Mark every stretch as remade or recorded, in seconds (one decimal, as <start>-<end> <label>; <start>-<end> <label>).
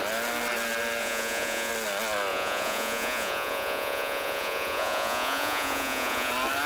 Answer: 0.0-1.0 recorded; 1.0-1.7 remade; 1.7-2.3 recorded; 2.3-6.3 remade; 6.3-6.7 recorded